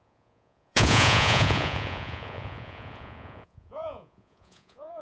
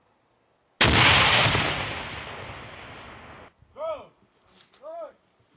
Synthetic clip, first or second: first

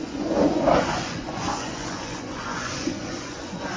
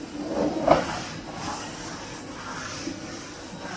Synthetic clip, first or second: first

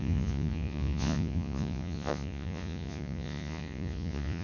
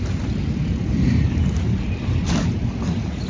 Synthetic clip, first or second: first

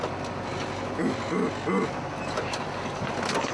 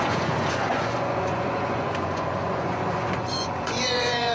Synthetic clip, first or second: second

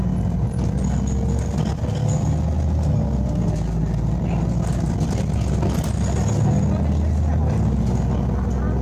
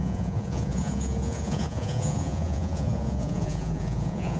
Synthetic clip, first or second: second